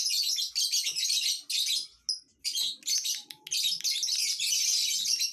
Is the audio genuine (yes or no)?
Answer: yes